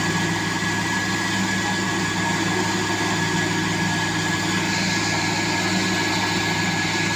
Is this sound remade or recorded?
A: recorded